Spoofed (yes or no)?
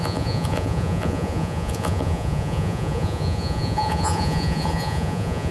yes